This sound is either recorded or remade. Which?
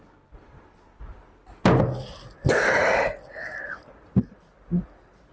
recorded